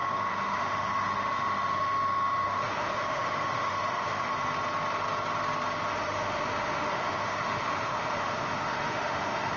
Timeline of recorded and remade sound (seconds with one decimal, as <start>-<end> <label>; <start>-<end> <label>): 0.0-4.3 remade; 4.3-5.9 recorded; 5.9-9.6 remade